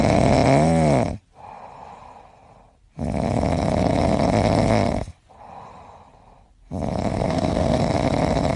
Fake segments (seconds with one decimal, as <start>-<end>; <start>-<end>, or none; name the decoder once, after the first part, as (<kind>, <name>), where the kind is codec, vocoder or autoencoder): 7.1-7.8 (codec, SNAC)